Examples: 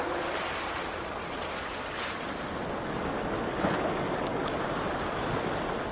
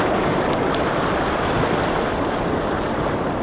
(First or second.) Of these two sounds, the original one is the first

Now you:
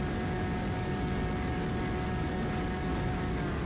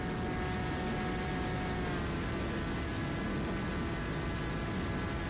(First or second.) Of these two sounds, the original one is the second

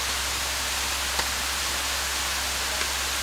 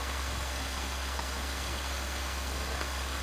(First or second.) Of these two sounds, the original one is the first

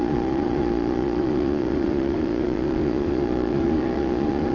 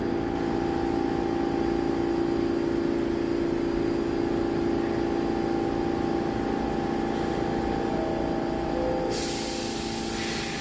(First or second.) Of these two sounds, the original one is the second